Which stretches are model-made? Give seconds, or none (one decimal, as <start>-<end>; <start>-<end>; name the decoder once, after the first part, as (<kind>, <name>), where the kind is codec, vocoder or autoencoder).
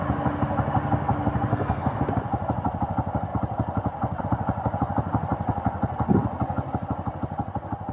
1.5-2.0 (codec, SNAC)